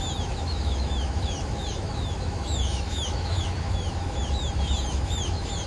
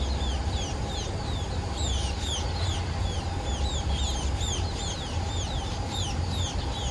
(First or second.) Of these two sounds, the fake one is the first